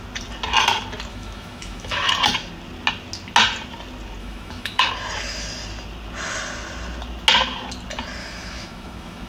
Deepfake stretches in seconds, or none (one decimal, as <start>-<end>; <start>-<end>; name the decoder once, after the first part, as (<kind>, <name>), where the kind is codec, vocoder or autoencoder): 1.1-2.1 (autoencoder, DAC-VAE); 4.2-4.9; 8.2-9.3